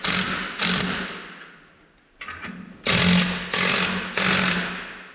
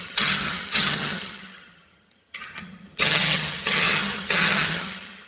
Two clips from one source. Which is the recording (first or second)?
first